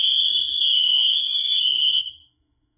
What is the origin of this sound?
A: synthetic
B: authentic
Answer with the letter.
A